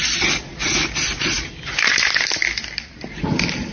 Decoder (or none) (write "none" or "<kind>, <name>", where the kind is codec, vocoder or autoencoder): none